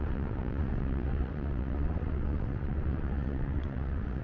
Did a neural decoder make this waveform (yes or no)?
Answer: yes